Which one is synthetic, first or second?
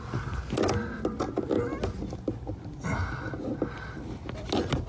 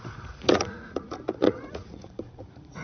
second